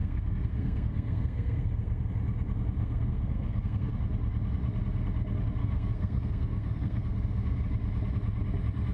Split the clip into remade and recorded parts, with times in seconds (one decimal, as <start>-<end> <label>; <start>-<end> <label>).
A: 0.0-2.1 remade; 2.1-2.8 recorded; 2.8-3.9 remade; 3.9-5.6 recorded; 5.6-7.6 remade; 7.6-8.9 recorded